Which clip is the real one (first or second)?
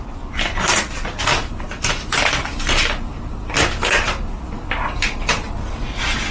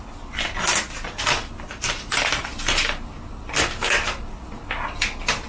second